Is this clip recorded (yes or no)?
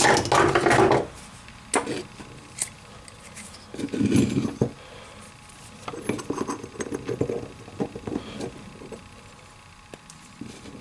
yes